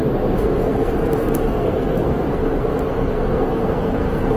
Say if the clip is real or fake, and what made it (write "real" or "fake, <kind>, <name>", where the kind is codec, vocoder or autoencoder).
fake, codec, SNAC